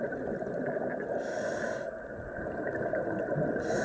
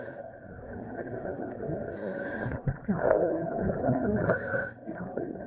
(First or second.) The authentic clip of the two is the first